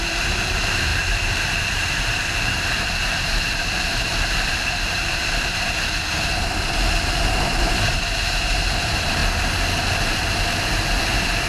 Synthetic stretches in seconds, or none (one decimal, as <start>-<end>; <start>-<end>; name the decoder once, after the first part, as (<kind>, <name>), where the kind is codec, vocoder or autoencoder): 0.0-9.2 (vocoder, BigVGAN v2); 11.0-11.5